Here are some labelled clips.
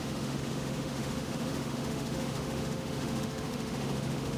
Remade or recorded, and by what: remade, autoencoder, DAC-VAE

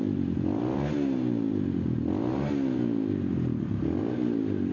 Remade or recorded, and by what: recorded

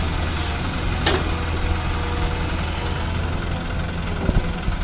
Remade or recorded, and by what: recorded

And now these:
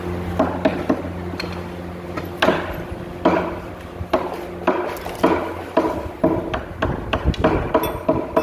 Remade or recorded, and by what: recorded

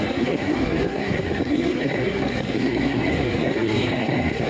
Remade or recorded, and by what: remade, codec, SNAC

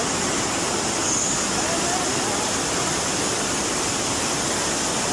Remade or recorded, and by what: recorded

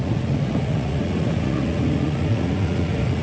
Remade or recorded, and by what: remade, vocoder, Vocos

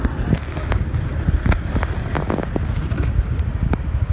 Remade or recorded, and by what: recorded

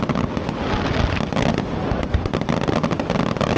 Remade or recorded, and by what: recorded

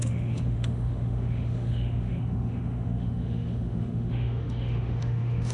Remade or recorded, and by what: remade, autoencoder, DAC-VAE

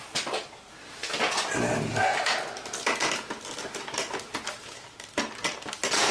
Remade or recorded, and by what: recorded